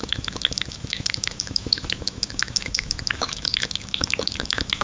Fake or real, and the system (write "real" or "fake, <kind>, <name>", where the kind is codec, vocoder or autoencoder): fake, autoencoder, DAC-VAE